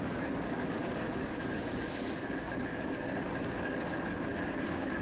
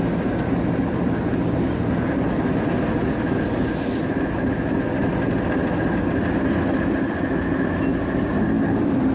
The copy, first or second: first